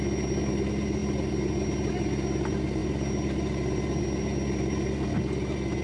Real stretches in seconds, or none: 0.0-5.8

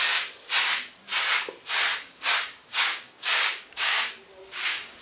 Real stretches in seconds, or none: 0.0-1.9; 4.0-4.4